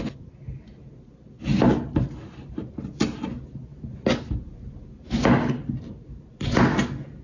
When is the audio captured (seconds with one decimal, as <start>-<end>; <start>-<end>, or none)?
0.0-7.2